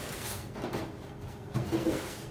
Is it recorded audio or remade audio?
remade